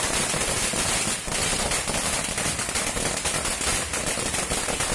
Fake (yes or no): no